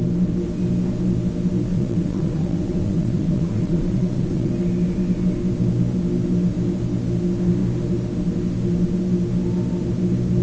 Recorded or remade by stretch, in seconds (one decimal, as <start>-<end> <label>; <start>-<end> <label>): 0.0-1.7 recorded; 1.7-4.5 remade; 4.5-10.4 recorded